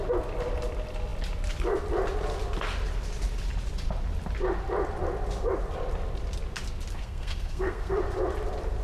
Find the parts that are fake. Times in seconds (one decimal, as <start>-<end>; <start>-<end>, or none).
7.0-8.0